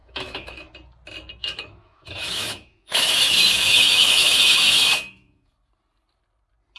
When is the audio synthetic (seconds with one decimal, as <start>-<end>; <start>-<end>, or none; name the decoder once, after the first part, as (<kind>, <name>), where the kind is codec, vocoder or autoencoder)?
0.0-0.7 (autoencoder, DAC-VAE); 1.4-5.5